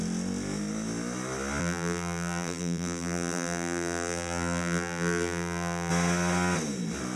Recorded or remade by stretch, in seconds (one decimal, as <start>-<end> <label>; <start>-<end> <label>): 0.0-1.6 recorded; 1.6-5.9 remade; 5.9-7.2 recorded